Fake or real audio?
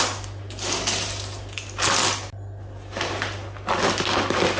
real